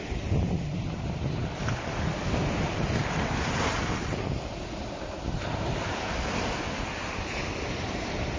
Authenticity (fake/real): real